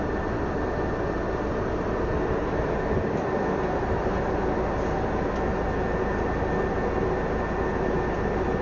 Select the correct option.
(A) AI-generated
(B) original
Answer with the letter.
B